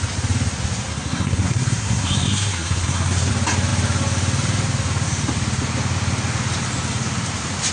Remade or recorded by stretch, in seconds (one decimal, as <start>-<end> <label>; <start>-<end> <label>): 0.0-0.9 recorded; 0.9-3.3 remade; 3.3-7.7 recorded